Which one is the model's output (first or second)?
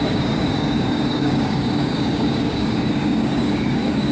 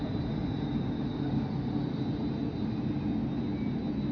first